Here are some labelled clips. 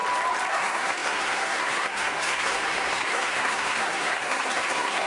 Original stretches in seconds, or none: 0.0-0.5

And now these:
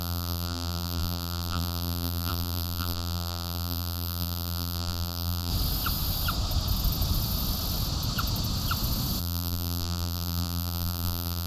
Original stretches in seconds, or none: 5.5-9.2

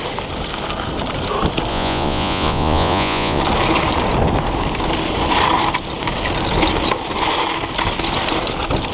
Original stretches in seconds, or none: 0.0-1.7; 3.4-8.9